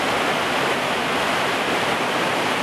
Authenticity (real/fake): real